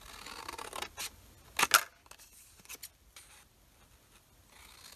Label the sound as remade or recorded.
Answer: recorded